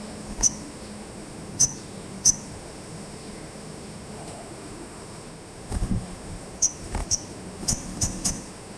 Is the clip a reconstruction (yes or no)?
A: yes